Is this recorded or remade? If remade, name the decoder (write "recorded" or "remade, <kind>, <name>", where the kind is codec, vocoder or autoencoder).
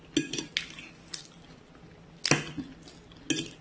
recorded